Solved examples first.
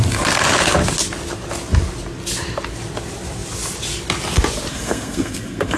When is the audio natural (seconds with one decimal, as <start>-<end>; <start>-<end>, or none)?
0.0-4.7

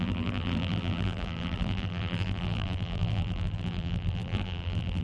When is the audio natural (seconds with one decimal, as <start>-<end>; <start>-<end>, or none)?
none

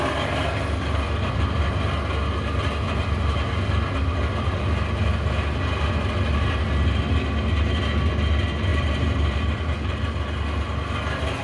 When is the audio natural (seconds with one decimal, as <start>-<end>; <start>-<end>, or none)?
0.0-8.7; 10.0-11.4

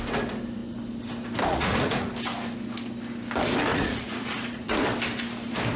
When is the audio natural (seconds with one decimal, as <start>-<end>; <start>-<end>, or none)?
0.0-1.5; 2.1-3.7; 4.9-5.8

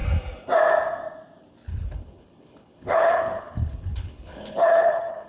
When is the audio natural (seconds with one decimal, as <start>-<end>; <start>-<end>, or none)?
0.0-1.7

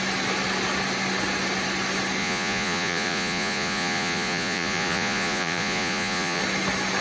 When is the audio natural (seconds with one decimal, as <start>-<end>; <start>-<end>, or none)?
0.0-2.2; 6.4-7.0